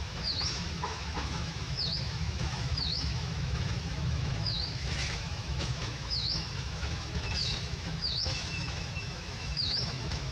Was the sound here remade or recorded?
remade